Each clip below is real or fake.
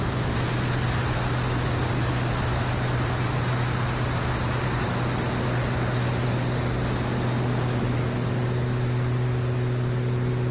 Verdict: real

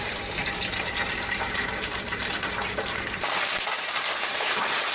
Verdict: fake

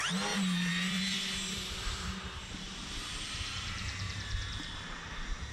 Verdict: fake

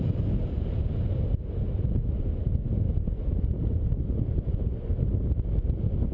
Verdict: real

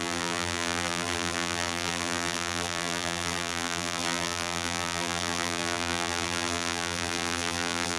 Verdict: fake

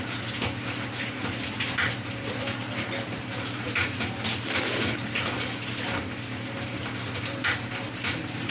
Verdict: fake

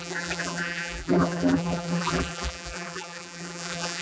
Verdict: fake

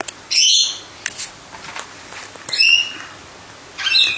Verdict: real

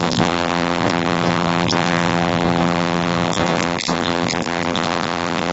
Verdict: fake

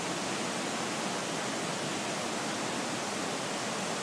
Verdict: real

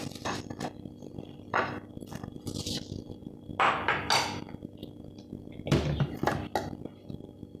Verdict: real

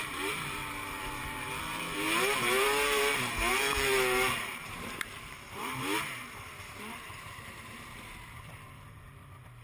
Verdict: fake